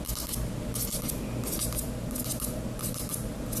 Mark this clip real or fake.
real